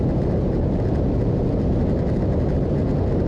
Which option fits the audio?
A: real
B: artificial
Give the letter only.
A